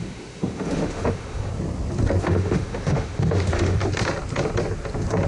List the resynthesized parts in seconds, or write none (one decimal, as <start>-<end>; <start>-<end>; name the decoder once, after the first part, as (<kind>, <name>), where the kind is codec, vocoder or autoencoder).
0.0-1.5 (autoencoder, DAC-VAE); 2.2-3.8